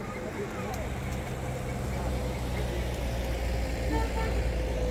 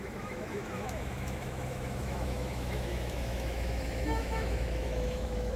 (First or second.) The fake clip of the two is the second